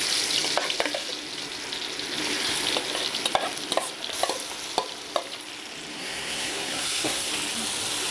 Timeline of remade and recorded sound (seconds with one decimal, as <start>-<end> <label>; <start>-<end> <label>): 0.0-5.9 recorded; 5.9-7.3 remade; 7.3-8.1 recorded